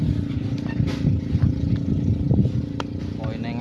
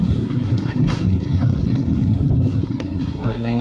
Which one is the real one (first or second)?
first